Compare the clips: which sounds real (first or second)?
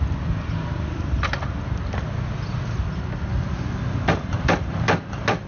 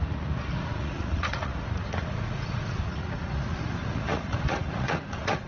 first